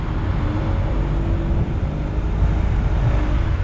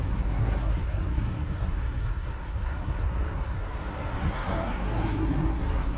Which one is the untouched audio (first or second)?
first